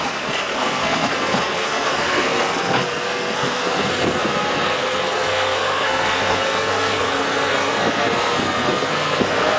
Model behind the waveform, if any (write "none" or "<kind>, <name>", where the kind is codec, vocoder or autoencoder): codec, SNAC